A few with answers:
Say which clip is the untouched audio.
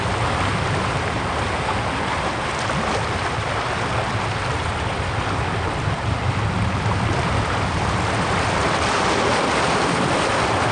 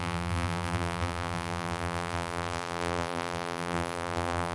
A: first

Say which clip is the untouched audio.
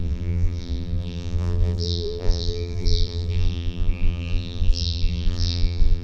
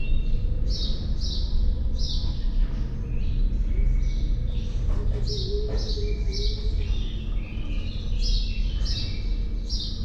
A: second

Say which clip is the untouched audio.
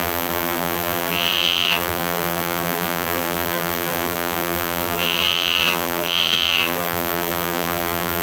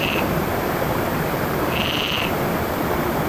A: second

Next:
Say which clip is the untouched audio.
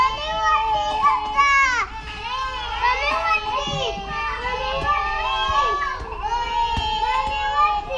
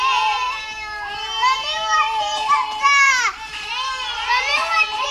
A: first